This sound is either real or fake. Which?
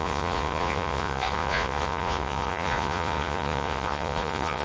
fake